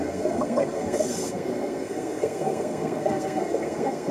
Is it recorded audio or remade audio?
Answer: remade